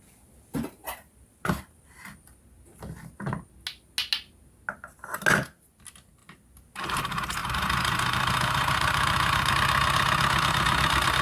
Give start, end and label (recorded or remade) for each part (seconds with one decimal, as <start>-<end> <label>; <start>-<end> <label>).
0.0-0.8 recorded; 0.8-2.0 remade; 2.0-7.4 recorded; 7.4-9.5 remade; 9.5-11.2 recorded

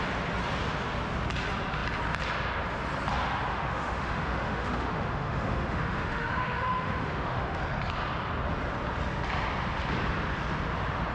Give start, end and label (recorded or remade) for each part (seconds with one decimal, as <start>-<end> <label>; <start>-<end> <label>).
0.0-3.5 recorded; 3.5-7.6 remade; 7.6-11.1 recorded

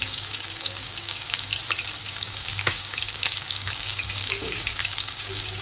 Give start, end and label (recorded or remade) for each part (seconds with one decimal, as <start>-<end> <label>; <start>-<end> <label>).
0.0-1.5 remade; 1.5-2.1 recorded; 2.1-5.6 remade

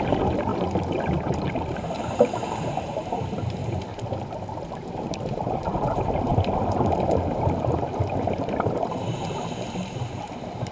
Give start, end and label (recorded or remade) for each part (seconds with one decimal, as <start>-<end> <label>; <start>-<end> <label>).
0.0-0.5 remade; 0.5-1.6 recorded; 1.6-3.6 remade; 3.6-4.7 recorded; 4.7-6.3 remade; 6.3-9.8 recorded; 9.8-10.7 remade

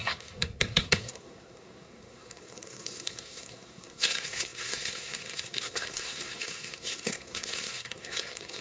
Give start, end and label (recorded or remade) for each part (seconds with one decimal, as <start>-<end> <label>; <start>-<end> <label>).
0.0-8.6 remade

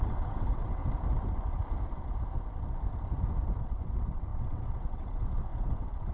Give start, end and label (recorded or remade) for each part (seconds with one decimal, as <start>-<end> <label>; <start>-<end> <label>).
0.0-0.8 remade; 0.8-3.6 recorded; 3.6-6.1 remade

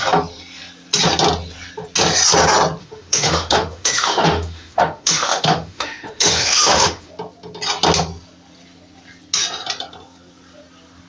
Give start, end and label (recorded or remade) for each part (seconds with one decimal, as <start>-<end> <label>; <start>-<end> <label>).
0.0-2.8 recorded; 2.8-7.1 remade; 7.1-11.1 recorded

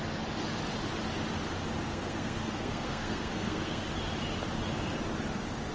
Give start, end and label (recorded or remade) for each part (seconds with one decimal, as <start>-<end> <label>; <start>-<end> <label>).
0.0-1.9 recorded; 1.9-3.8 remade; 3.8-5.7 recorded